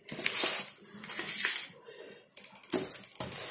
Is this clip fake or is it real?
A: real